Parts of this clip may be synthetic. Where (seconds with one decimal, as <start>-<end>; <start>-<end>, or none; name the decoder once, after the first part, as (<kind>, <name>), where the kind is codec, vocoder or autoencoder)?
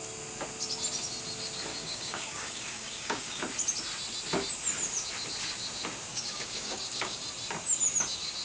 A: 1.7-3.4 (codec, DAC); 6.1-7.2